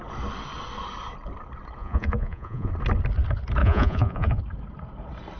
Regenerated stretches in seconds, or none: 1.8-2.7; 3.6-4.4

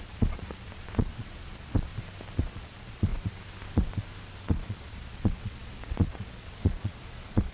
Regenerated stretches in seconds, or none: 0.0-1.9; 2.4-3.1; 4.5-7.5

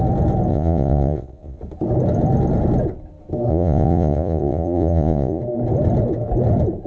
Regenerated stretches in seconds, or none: 0.5-1.6; 3.5-5.4

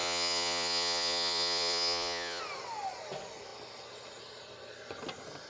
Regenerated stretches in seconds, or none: 0.0-2.4

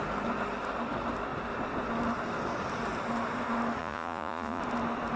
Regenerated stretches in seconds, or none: 3.8-4.6

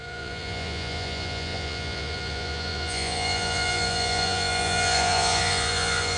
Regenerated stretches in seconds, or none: 0.0-6.2

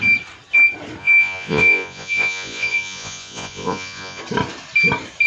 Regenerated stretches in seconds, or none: 1.0-4.2